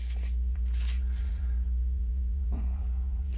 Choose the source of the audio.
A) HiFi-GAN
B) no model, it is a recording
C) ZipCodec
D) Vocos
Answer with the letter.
D